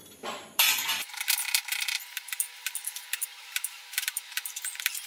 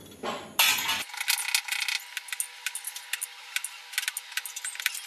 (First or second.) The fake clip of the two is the first